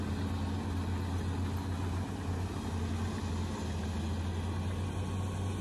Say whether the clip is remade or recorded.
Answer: recorded